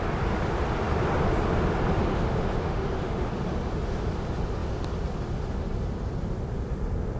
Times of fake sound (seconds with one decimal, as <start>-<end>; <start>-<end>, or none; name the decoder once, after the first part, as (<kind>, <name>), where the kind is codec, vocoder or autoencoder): 2.1-3.3 (autoencoder, DAC-VAE)